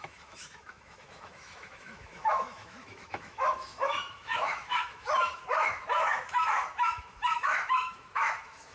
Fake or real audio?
fake